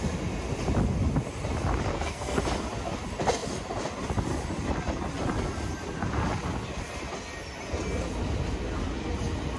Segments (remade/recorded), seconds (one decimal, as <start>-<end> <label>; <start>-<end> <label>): 0.0-1.9 recorded; 1.9-2.4 remade; 2.4-9.6 recorded